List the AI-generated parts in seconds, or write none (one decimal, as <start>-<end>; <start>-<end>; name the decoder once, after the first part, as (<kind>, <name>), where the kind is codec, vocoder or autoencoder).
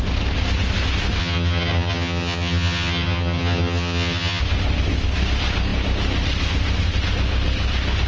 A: 1.2-4.4 (vocoder, HiFi-GAN)